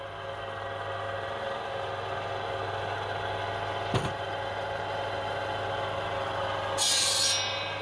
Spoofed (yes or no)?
no